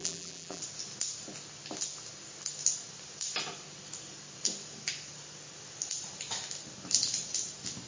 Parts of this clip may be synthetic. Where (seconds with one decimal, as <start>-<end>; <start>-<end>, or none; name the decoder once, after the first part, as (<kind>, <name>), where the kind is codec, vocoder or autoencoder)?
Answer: 0.0-0.6 (vocoder, BigVGAN v2)